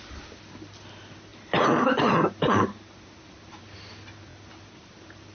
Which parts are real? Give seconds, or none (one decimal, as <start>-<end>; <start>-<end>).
0.0-5.3